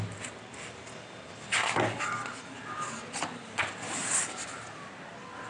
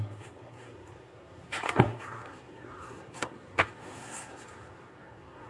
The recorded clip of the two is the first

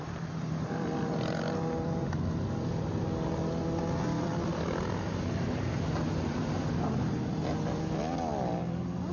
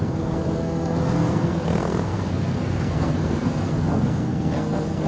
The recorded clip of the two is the first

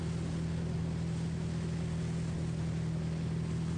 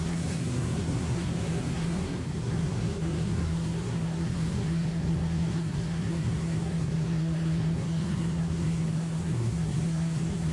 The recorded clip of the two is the first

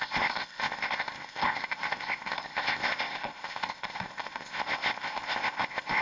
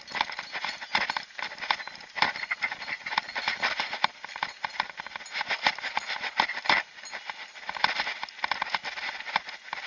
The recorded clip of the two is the second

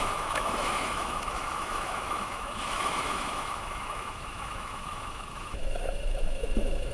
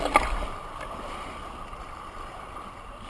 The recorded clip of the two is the second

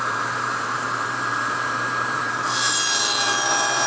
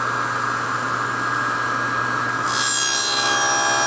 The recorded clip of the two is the second